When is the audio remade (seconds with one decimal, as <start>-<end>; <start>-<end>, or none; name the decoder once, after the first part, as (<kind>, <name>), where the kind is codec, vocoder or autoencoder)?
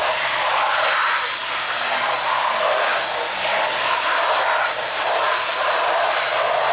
none